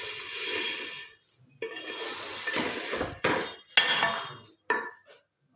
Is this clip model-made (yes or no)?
no